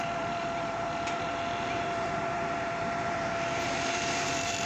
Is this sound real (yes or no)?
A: no